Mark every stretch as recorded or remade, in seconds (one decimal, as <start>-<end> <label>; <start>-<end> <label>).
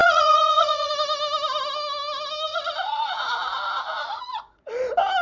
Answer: 0.0-0.9 remade; 0.9-2.5 recorded; 2.5-4.7 remade; 4.7-5.2 recorded